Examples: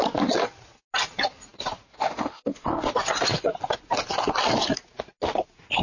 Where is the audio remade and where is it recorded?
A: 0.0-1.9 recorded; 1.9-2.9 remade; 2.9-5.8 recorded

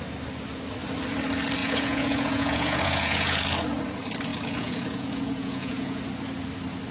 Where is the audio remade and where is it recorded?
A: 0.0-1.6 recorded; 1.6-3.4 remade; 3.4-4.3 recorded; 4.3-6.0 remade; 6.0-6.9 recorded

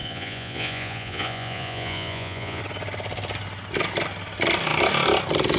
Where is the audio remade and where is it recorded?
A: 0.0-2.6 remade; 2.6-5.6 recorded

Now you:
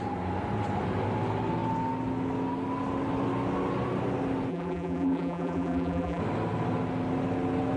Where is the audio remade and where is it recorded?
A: 0.0-4.5 recorded; 4.5-6.2 remade; 6.2-7.8 recorded

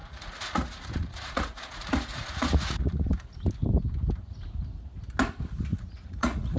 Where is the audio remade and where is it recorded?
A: 0.0-3.1 remade; 3.1-5.7 recorded; 5.7-6.6 remade

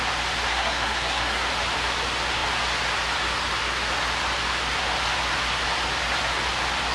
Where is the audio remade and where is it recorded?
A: 0.0-0.5 recorded; 0.5-1.5 remade; 1.5-6.9 recorded

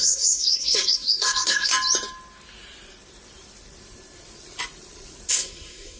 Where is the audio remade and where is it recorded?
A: 0.0-1.7 remade; 1.7-5.3 recorded; 5.3-6.0 remade